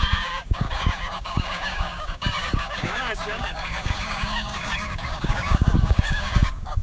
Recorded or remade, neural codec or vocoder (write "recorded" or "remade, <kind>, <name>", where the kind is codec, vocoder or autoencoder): remade, codec, DAC